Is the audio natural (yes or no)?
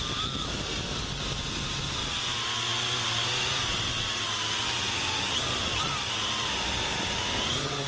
yes